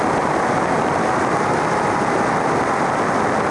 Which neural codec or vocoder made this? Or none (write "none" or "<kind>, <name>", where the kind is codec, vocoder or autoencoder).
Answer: none